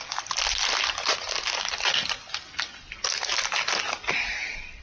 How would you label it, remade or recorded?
recorded